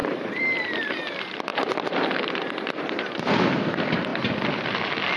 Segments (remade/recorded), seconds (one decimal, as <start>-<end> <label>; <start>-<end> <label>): 0.0-0.9 remade; 0.9-1.5 recorded; 1.5-3.0 remade; 3.0-4.1 recorded; 4.1-4.7 remade; 4.7-5.2 recorded